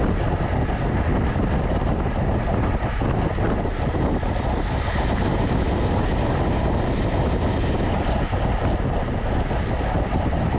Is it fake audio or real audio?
real